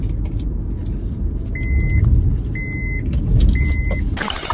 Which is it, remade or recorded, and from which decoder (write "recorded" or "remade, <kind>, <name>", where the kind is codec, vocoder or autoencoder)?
recorded